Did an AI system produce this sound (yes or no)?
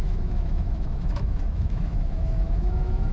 yes